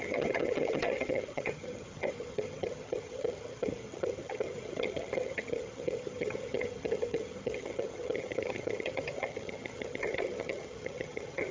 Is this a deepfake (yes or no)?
yes